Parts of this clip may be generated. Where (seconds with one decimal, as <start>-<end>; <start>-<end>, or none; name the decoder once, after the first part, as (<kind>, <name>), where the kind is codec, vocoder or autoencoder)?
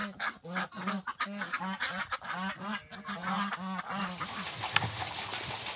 none